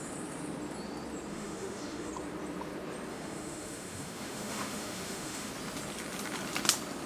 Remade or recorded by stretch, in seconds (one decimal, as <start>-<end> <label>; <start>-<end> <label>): 0.0-1.3 recorded; 1.3-2.1 remade; 2.1-3.1 recorded; 3.1-5.5 remade; 5.5-7.1 recorded